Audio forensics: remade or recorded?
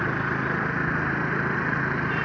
remade